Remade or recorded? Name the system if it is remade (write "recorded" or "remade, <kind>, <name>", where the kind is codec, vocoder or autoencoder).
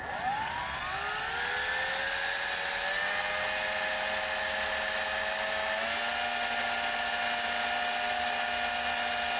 recorded